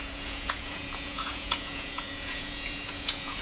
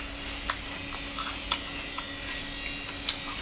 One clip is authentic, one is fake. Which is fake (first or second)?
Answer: first